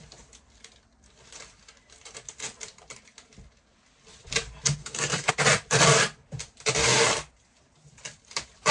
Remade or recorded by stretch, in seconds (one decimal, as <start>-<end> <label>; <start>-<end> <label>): 0.0-4.8 recorded; 4.8-5.3 remade; 5.3-8.7 recorded